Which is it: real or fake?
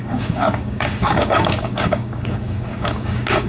fake